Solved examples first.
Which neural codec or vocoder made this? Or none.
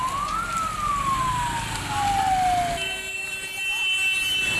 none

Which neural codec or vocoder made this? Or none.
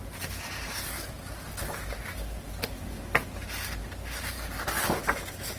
none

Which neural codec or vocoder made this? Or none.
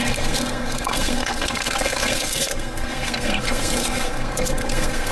codec, SNAC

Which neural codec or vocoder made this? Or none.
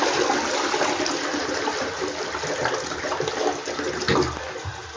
none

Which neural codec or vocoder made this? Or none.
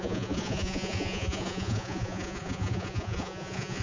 vocoder, Vocos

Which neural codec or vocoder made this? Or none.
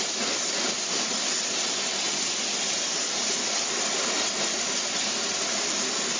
none